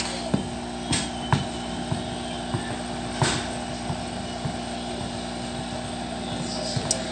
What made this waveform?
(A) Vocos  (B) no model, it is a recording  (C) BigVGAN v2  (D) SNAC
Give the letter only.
B